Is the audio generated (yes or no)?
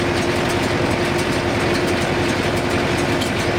no